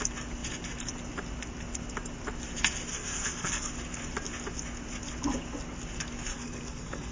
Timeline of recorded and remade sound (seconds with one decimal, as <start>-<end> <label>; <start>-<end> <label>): 0.0-2.9 recorded; 2.9-3.7 remade; 3.7-6.3 recorded; 6.3-7.1 remade